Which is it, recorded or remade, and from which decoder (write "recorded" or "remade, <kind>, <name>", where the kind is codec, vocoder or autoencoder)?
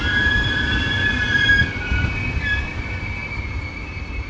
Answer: remade, vocoder, BigVGAN v2